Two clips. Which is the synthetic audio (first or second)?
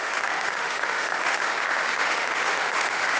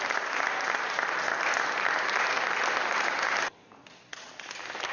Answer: first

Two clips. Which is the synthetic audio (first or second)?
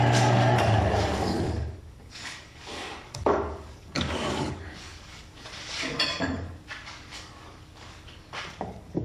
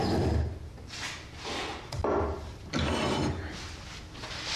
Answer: first